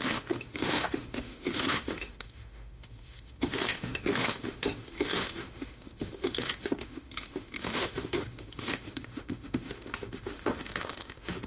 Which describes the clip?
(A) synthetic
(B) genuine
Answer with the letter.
A